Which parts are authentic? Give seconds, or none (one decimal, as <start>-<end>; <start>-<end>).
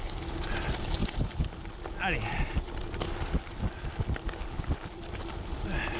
0.0-6.0